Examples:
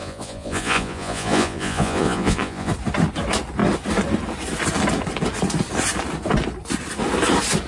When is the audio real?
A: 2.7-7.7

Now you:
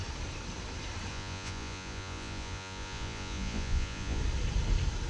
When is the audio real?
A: 0.0-1.1; 4.2-5.1

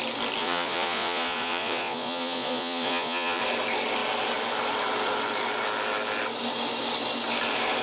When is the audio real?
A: 0.0-0.4; 3.4-7.8

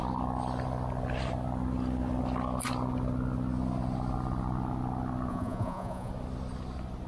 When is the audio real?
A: 0.0-5.3; 6.1-7.1